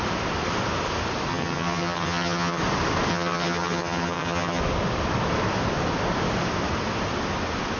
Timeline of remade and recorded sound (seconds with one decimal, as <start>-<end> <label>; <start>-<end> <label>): 0.0-1.3 recorded; 1.3-2.6 remade; 2.6-3.1 recorded; 3.1-4.6 remade; 4.6-7.8 recorded